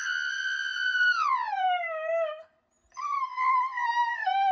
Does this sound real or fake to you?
real